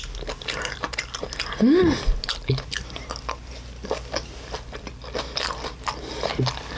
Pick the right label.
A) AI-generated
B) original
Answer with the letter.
B